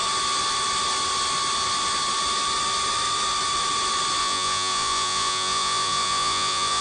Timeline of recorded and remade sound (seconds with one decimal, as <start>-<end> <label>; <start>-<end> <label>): 0.0-4.2 recorded; 4.2-6.8 remade